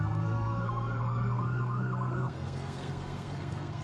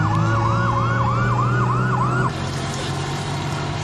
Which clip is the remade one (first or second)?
first